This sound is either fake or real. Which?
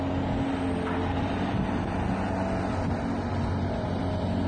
real